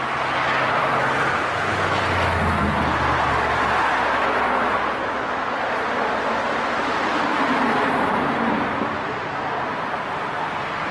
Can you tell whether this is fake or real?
real